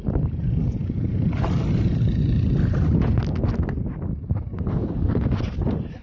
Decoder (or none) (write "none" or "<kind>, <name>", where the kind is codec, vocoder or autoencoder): none